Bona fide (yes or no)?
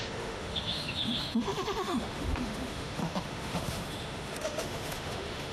no